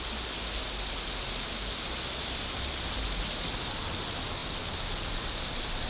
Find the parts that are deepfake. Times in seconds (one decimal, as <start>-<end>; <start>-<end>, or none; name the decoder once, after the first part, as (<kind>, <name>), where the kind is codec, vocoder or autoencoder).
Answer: none